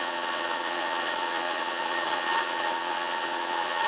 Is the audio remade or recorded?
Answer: remade